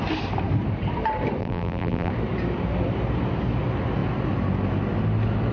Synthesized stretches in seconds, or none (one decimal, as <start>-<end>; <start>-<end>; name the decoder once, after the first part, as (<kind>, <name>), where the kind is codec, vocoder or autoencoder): 1.4-2.1 (vocoder, BigVGAN v2)